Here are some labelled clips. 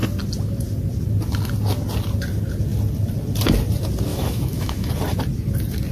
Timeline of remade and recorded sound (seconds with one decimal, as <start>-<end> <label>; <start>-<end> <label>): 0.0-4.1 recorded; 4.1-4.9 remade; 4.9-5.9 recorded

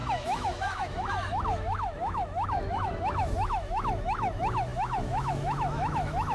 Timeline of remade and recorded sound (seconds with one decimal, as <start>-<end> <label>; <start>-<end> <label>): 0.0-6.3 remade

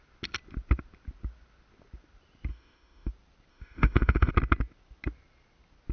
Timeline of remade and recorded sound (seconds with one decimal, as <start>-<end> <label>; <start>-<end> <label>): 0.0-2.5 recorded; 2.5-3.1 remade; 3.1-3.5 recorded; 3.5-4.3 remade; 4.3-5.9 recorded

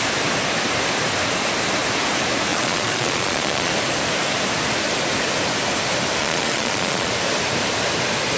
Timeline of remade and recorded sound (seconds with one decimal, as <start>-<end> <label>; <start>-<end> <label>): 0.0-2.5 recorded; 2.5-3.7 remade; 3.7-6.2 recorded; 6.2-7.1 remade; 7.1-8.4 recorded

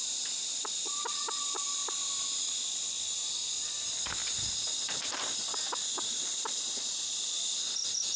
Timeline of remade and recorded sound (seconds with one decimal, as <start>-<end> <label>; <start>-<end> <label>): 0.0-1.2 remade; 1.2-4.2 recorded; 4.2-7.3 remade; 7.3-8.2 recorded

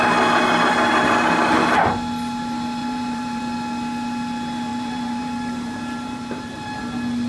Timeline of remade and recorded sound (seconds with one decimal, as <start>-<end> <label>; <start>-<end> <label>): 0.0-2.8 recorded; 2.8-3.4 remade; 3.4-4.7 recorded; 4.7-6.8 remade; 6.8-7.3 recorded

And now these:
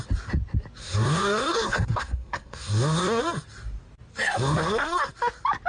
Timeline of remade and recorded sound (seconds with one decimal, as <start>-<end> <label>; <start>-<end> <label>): 0.0-0.8 recorded; 0.8-3.2 remade; 3.2-4.1 recorded; 4.1-5.1 remade; 5.1-5.7 recorded

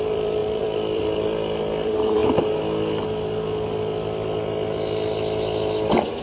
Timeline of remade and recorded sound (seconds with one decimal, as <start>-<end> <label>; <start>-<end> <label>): 0.0-2.2 remade; 2.2-6.2 recorded